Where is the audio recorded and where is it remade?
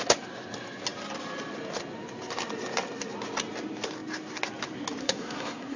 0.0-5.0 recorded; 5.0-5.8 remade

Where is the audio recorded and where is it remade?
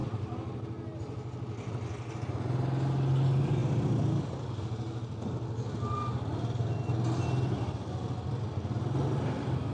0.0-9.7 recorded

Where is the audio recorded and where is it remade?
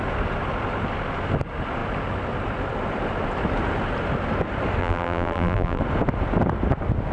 0.0-4.8 recorded; 4.8-5.8 remade; 5.8-7.1 recorded